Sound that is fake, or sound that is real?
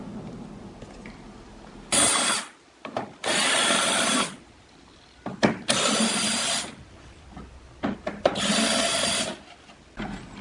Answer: real